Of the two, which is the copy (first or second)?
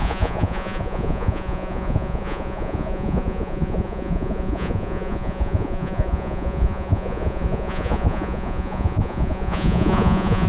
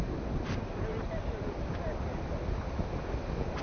first